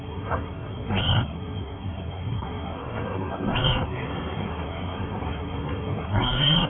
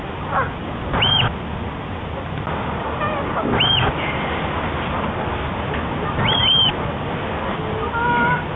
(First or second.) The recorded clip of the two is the second